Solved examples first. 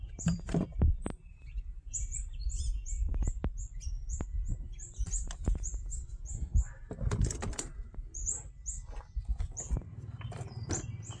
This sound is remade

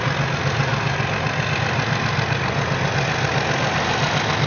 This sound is recorded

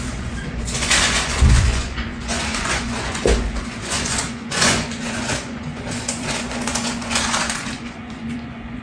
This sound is remade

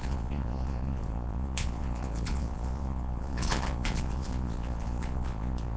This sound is remade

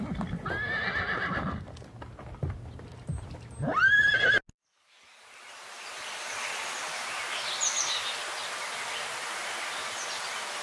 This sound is recorded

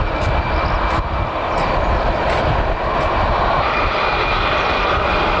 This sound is recorded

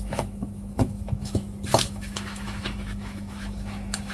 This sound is remade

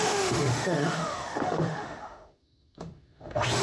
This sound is remade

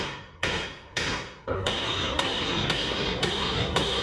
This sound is remade